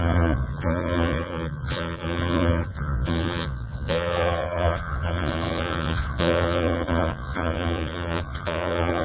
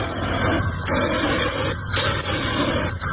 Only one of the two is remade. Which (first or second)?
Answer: first